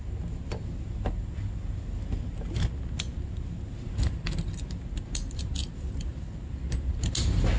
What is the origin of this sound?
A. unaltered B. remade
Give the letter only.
A